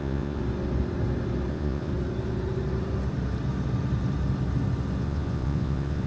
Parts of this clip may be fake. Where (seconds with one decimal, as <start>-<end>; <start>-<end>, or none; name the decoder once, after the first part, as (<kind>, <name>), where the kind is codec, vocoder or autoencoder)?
0.0-0.4 (vocoder, Vocos); 1.5-1.9; 5.0-6.1